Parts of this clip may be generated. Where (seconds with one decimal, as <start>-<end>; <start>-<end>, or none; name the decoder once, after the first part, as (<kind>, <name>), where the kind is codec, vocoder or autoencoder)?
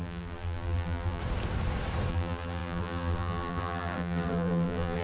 0.0-1.2 (vocoder, BigVGAN v2); 2.1-5.0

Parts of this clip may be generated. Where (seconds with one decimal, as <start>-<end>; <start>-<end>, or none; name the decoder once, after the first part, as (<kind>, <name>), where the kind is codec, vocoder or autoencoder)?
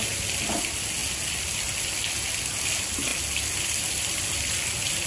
none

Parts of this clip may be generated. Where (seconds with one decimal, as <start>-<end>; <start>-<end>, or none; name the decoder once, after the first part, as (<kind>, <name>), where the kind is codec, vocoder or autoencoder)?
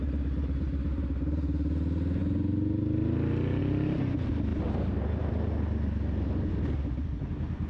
none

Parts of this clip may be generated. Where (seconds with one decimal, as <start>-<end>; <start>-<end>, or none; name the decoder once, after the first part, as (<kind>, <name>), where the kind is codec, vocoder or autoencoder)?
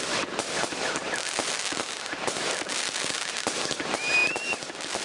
none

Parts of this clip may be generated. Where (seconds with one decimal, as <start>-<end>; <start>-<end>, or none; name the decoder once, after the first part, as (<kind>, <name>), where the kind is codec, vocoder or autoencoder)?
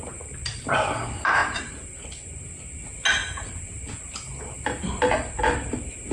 none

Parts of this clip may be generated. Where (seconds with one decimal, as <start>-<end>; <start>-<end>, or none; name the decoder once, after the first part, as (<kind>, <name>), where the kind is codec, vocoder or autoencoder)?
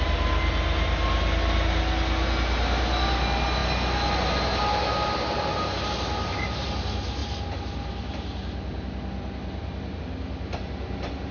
none